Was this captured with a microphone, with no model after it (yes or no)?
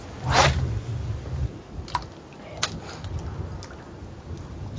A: yes